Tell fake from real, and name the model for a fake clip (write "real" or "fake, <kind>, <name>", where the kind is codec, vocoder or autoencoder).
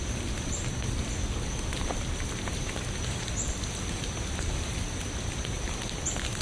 real